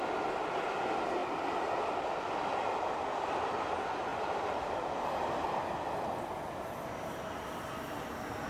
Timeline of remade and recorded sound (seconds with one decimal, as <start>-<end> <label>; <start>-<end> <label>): 0.0-8.5 recorded